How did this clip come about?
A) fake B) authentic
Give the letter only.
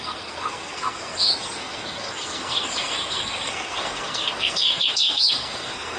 A